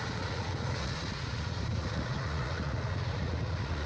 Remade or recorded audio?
remade